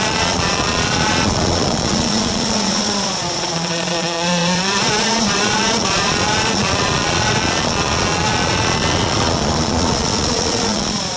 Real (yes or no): no